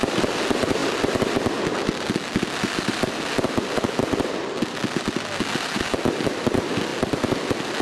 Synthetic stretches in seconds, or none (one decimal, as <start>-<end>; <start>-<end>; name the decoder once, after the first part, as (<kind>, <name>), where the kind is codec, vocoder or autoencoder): none